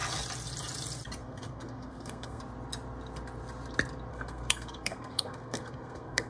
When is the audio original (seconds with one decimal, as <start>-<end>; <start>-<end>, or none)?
0.0-1.2; 2.4-4.1